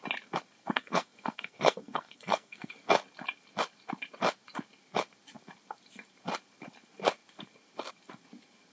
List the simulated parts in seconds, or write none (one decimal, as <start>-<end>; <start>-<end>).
0.6-2.7